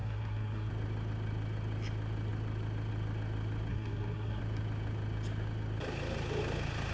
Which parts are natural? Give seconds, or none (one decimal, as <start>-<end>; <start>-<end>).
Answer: 0.7-3.7; 4.4-6.9